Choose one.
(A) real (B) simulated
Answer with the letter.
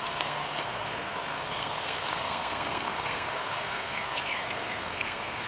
B